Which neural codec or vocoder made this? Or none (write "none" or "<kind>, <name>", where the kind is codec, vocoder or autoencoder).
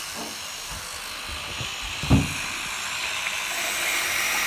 none